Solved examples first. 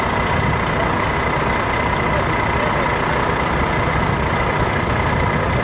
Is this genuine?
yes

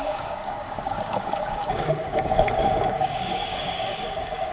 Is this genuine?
no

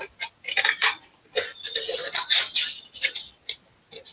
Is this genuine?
yes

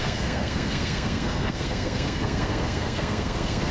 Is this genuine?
no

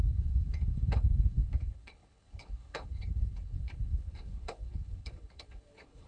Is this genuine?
no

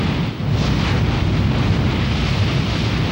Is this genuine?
yes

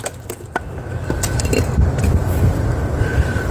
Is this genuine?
yes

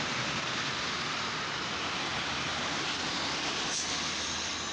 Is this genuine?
yes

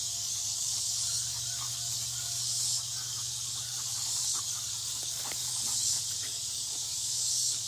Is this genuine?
no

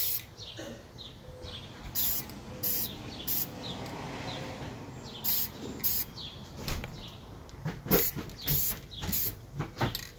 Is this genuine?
yes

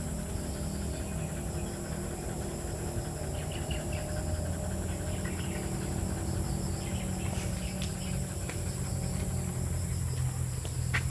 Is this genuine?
yes